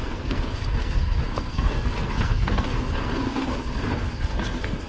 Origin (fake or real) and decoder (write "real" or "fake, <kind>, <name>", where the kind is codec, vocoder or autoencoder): fake, codec, SNAC